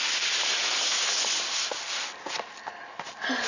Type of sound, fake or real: real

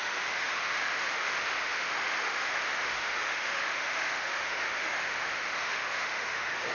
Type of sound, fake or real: fake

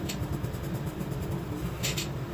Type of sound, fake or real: fake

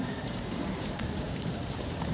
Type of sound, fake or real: fake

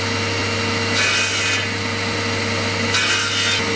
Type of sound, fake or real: real